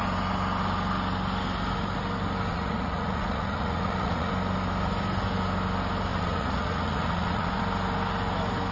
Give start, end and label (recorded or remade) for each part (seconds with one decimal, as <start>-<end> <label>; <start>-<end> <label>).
0.0-2.5 recorded; 2.5-4.3 remade; 4.3-6.1 recorded; 6.1-7.6 remade; 7.6-8.7 recorded